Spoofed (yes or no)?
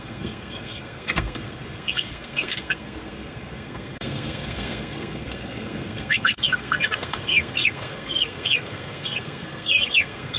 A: yes